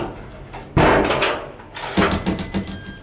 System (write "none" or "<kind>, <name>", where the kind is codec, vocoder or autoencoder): none